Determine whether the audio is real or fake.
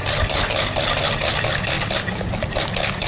real